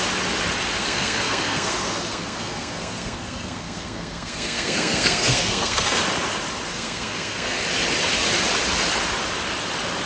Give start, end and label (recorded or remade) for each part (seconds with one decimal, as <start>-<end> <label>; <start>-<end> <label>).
0.0-0.8 recorded; 0.8-6.0 remade; 6.0-6.7 recorded; 6.7-7.6 remade; 7.6-10.1 recorded